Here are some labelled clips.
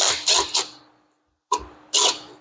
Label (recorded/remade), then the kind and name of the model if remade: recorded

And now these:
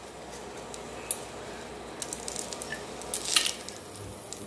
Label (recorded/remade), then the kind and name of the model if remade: recorded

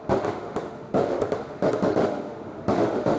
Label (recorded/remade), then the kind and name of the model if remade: remade, autoencoder, DAC-VAE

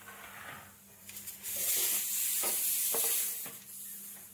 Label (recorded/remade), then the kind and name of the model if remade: recorded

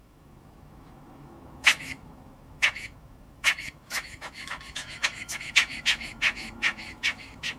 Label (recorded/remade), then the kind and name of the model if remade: remade, autoencoder, DAC-VAE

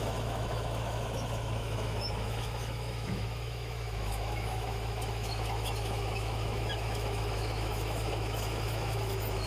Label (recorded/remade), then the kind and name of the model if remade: remade, autoencoder, DAC-VAE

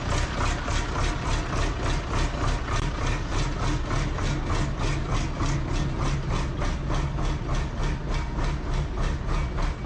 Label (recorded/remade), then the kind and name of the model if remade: recorded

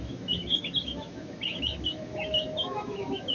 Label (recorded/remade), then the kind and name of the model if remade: remade, autoencoder, DAC-VAE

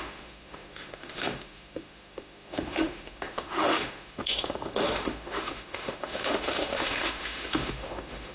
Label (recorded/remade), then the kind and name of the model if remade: remade, autoencoder, DAC-VAE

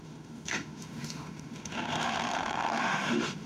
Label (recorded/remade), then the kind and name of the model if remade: remade, autoencoder, DAC-VAE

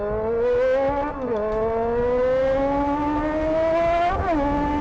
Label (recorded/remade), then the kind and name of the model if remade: recorded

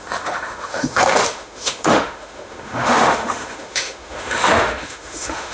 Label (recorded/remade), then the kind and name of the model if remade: remade, autoencoder, DAC-VAE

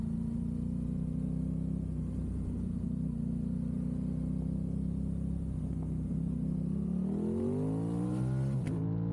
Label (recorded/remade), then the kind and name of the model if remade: recorded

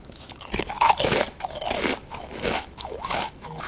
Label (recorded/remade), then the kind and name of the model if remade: remade, autoencoder, DAC-VAE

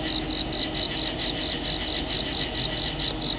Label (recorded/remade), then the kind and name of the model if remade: recorded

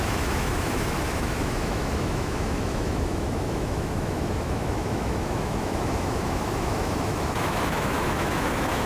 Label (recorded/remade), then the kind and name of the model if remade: remade, autoencoder, DAC-VAE